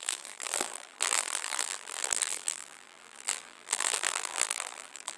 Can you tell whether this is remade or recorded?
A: remade